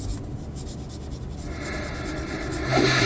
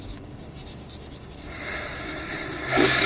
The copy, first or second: second